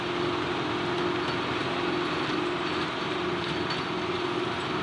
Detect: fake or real real